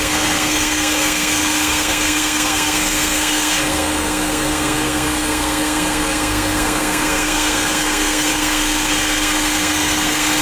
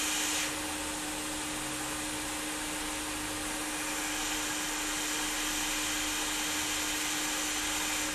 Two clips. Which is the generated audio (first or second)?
first